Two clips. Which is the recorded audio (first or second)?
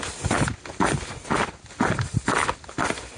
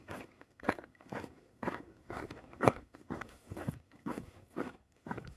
first